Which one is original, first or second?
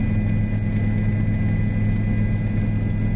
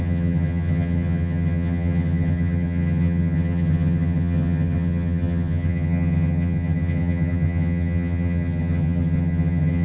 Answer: first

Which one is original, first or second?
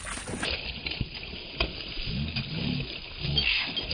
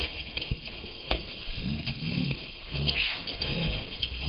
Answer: first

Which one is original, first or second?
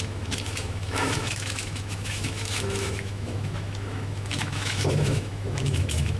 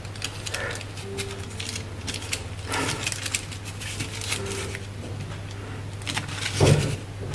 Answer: second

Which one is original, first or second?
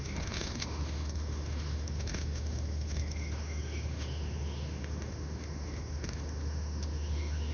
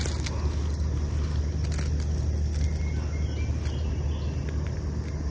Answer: second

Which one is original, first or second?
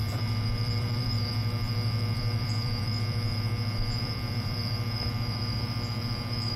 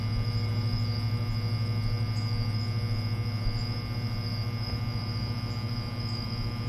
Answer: second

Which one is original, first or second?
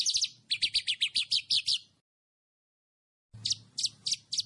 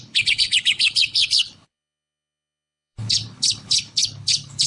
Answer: first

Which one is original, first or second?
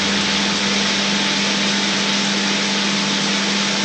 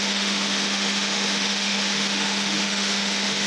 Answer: first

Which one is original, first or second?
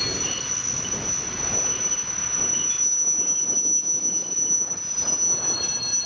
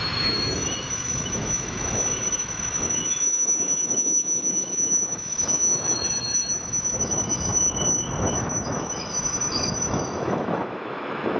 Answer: first